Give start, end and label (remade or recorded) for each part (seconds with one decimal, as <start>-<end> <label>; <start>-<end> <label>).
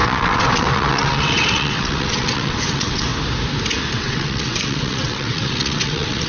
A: 0.0-3.1 remade; 3.1-3.9 recorded; 3.9-6.3 remade